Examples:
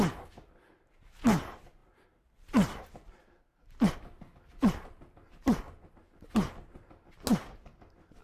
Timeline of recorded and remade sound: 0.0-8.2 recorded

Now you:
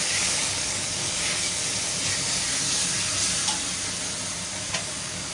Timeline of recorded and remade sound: 0.0-1.6 remade; 1.6-4.8 recorded; 4.8-5.3 remade

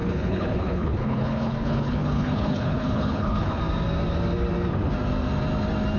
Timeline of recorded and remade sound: 0.0-3.6 remade; 3.6-6.0 recorded

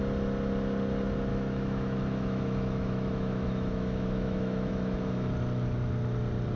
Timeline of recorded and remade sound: 0.0-1.3 recorded; 1.3-5.3 remade; 5.3-6.6 recorded